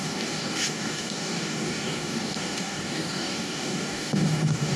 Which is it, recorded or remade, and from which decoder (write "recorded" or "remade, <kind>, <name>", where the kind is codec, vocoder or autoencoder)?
remade, codec, DAC